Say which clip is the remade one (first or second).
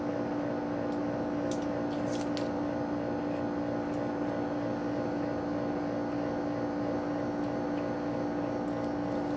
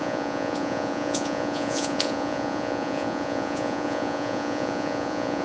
second